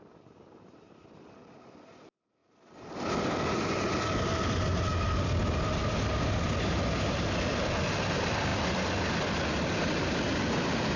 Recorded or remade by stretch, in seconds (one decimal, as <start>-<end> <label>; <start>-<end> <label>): 0.0-11.0 recorded